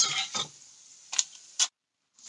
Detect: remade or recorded recorded